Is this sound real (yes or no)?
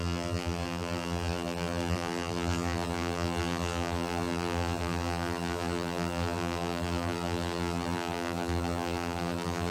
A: no